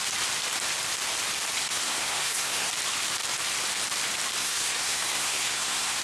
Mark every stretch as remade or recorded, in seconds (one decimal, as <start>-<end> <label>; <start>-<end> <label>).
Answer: 0.0-1.6 recorded; 1.6-2.7 remade; 2.7-4.4 recorded; 4.4-6.0 remade